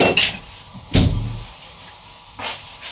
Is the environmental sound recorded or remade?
recorded